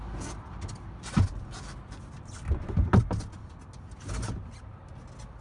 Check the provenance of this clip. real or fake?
real